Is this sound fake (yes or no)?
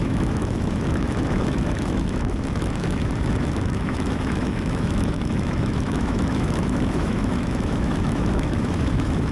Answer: yes